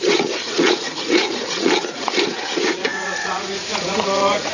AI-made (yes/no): yes